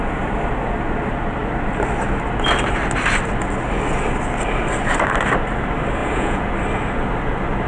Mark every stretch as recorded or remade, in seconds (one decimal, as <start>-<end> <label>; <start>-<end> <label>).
0.0-6.0 recorded; 6.0-6.5 remade; 6.5-7.7 recorded